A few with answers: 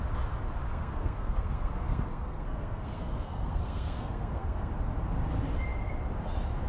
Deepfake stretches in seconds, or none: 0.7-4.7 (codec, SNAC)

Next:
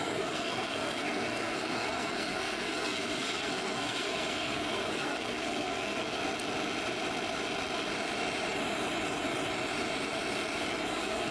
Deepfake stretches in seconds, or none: 0.0-6.2 (codec, SNAC); 10.9-11.3

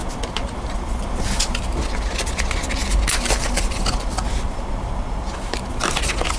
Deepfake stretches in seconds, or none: none

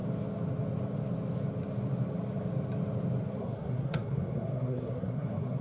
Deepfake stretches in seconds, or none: 3.4-5.6 (codec, SNAC)

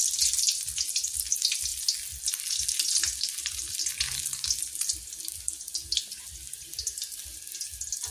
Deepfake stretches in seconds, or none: none

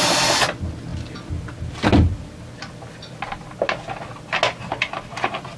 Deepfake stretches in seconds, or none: none

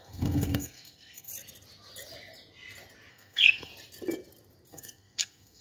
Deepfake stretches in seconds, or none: 0.0-1.3 (codec, SNAC); 3.1-3.7; 4.7-5.6

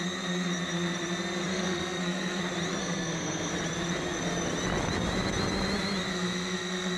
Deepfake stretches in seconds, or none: 1.5-2.4 (codec, SNAC); 2.8-3.5; 6.1-7.0